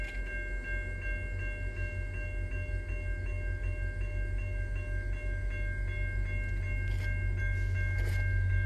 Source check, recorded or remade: recorded